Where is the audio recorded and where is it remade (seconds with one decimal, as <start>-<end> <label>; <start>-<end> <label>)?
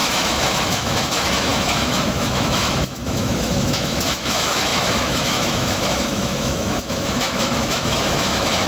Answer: 0.0-8.7 remade